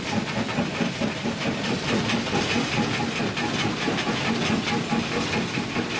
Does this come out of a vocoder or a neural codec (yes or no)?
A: no